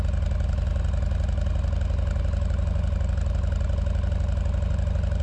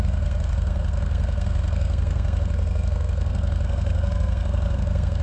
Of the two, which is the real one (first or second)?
first